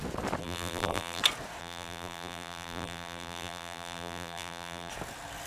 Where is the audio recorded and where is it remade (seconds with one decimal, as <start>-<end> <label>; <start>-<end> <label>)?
0.0-0.4 recorded; 0.4-1.2 remade; 1.2-1.6 recorded; 1.6-4.9 remade; 4.9-5.5 recorded